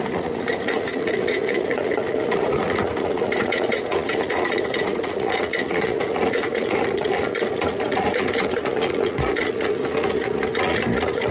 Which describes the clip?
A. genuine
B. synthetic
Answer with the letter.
B